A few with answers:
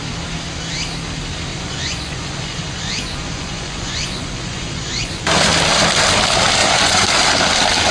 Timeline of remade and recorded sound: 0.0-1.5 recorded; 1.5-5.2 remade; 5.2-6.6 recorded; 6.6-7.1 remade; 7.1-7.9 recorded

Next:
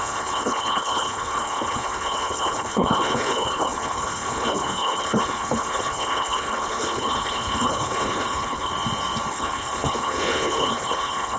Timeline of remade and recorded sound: 0.0-8.7 remade; 8.7-9.3 recorded; 9.3-11.4 remade

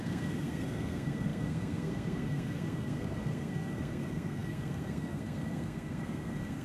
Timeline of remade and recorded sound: 0.0-6.6 remade

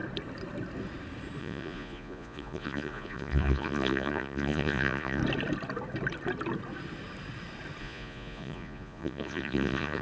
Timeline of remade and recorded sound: 0.0-1.4 recorded; 1.4-5.2 remade; 5.2-7.8 recorded; 7.8-10.0 remade